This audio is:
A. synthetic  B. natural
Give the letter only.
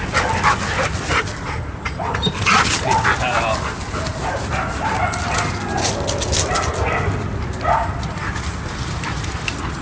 B